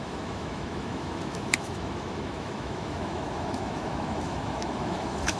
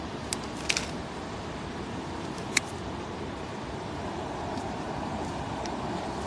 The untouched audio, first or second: second